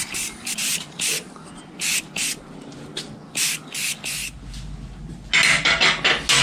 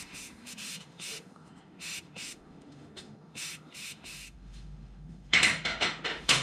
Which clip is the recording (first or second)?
first